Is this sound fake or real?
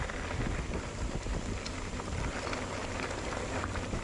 real